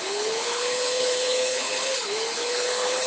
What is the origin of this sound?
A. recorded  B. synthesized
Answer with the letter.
B